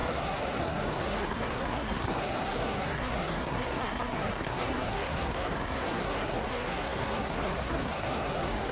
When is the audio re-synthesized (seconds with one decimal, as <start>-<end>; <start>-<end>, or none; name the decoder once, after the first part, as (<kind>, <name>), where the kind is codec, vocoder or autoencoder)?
0.0-8.7 (codec, SNAC)